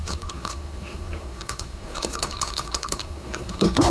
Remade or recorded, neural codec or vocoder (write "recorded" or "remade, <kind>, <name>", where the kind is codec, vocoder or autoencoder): remade, codec, SNAC